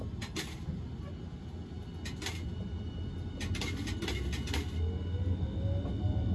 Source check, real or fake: real